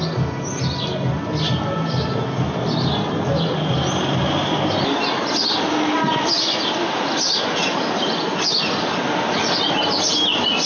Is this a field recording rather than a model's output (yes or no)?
yes